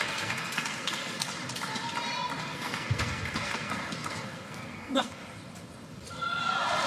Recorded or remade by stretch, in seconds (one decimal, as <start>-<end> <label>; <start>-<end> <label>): 0.0-1.3 remade; 1.3-2.4 recorded; 2.4-5.2 remade; 5.2-6.9 recorded